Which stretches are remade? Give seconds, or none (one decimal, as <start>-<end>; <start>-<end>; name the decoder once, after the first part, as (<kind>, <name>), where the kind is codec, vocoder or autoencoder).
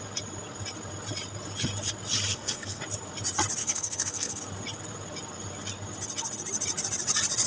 2.3-2.8 (codec, SNAC); 3.6-4.4